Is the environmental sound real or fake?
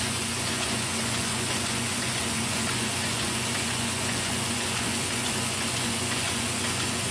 fake